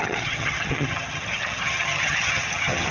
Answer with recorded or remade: remade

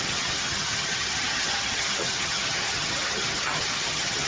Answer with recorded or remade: remade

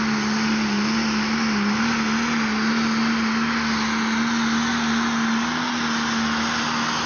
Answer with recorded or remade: recorded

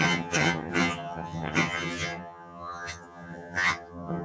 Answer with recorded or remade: remade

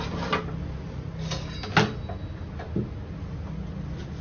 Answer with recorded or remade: recorded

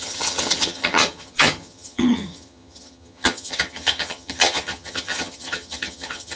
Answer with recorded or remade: remade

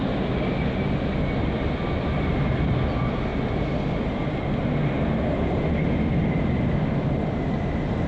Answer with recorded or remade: recorded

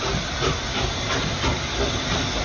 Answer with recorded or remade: recorded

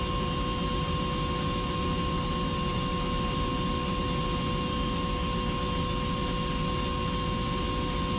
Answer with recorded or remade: recorded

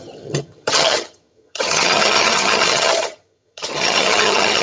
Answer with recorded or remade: remade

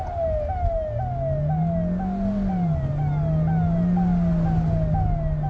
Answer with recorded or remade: recorded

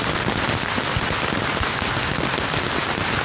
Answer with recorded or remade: recorded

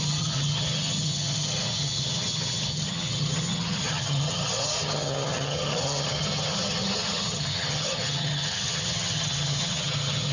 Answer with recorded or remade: remade